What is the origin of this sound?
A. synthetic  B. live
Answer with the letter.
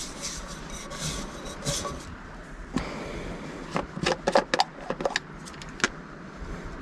B